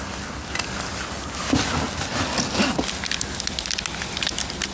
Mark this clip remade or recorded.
recorded